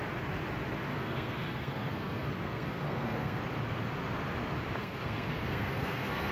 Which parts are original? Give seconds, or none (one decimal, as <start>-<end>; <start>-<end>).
0.0-0.9; 3.4-4.8